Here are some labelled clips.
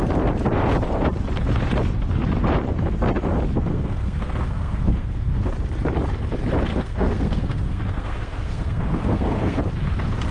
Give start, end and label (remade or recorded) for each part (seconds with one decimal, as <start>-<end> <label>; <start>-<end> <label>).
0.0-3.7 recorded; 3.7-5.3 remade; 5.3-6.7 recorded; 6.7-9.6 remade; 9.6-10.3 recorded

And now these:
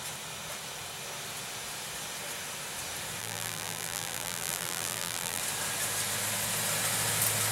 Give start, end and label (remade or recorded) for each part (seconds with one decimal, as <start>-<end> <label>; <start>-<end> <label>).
0.0-3.2 recorded; 3.2-5.4 remade; 5.4-7.5 recorded

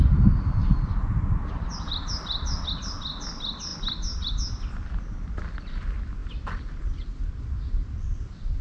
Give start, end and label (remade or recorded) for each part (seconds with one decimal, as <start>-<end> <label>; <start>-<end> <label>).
0.0-6.2 recorded; 6.2-6.8 remade; 6.8-8.6 recorded

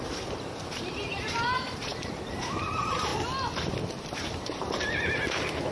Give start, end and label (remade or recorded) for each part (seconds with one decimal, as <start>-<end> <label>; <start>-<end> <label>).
0.0-3.1 remade; 3.1-4.0 recorded; 4.0-5.7 remade

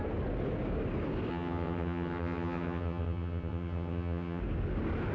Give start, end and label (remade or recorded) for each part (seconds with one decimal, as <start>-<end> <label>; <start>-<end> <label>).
0.0-1.3 recorded; 1.3-4.4 remade; 4.4-5.1 recorded